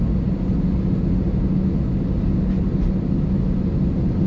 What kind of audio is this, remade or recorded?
recorded